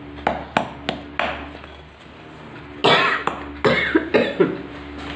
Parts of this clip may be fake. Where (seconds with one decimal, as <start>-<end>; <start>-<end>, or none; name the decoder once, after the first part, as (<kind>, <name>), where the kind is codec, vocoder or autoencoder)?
none